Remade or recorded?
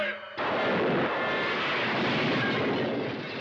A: recorded